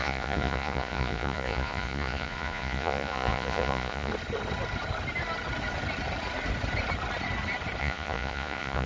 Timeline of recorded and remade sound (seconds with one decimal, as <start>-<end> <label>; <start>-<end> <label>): 0.0-4.1 remade; 4.1-7.8 recorded; 7.8-8.9 remade